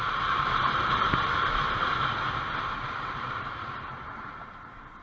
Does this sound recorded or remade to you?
remade